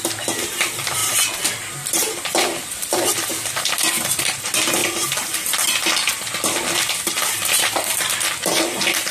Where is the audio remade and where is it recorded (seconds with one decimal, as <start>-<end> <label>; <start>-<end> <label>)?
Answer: 0.0-9.1 recorded